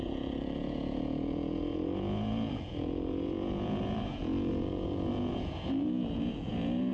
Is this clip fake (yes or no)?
yes